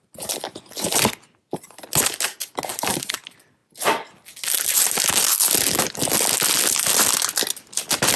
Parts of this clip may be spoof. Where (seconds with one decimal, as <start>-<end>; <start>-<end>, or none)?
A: none